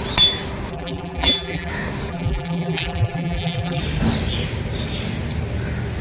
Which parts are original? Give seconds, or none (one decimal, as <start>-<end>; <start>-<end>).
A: 0.0-0.7; 1.7-2.1; 3.8-6.0